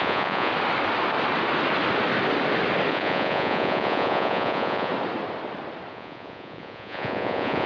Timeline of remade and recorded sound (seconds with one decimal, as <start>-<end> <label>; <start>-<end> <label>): 0.0-0.5 remade; 0.5-2.9 recorded; 2.9-4.9 remade; 4.9-5.9 recorded; 5.9-7.7 remade